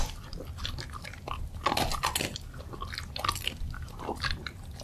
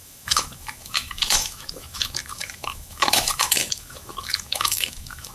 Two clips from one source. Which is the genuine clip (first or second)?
first